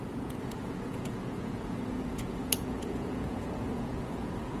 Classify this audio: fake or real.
fake